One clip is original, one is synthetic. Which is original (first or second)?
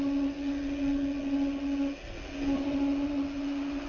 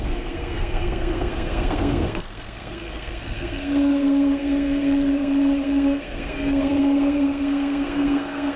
first